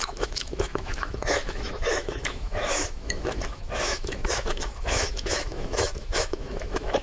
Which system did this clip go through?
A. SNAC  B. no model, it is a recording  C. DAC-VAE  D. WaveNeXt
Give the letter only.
C